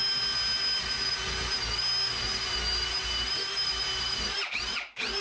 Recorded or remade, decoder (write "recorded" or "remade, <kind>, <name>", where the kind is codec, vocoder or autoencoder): recorded